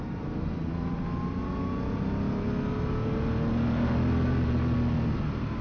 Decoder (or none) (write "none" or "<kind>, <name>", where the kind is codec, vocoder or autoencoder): none